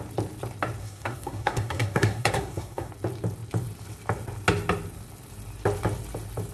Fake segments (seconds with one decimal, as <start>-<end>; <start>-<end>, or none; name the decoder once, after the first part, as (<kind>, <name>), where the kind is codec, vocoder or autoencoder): 0.8-2.9 (codec, SNAC)

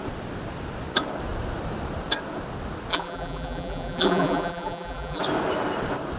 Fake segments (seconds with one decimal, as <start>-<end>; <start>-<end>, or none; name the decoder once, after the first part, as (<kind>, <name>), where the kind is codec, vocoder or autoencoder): 2.9-5.2 (vocoder, BigVGAN v2)

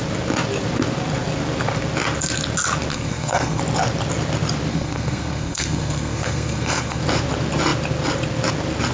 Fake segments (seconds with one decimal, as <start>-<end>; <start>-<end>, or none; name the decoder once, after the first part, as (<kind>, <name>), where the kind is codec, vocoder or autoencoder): 2.9-3.6 (codec, SNAC); 4.7-7.0

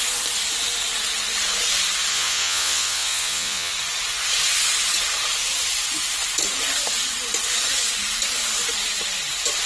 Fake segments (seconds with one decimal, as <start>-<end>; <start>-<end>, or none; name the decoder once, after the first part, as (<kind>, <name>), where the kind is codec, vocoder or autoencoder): 2.1-3.7 (vocoder, Vocos)

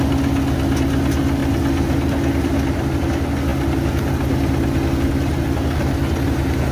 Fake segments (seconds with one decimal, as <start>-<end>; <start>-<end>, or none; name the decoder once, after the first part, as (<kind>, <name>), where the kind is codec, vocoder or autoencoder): none

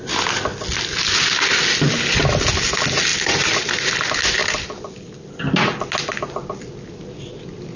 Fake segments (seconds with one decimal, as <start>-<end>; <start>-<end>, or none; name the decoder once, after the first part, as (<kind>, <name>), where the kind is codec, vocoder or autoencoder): 3.1-3.7 (vocoder, BigVGAN v2)